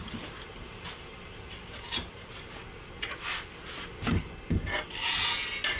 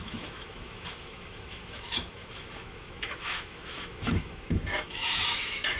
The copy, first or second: second